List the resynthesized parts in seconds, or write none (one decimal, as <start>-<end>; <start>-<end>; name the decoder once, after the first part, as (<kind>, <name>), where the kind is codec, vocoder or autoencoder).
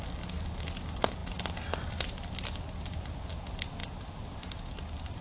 none